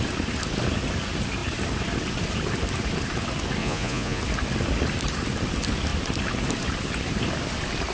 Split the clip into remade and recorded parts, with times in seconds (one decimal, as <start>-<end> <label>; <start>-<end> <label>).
0.0-3.6 recorded; 3.6-4.2 remade; 4.2-7.9 recorded